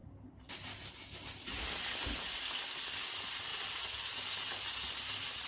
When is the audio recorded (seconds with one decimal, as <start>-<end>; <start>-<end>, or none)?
0.0-5.5